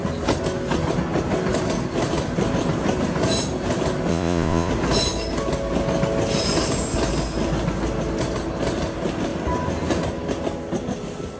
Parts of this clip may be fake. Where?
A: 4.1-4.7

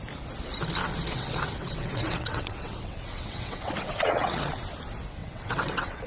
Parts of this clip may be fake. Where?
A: 1.1-4.5; 5.2-6.1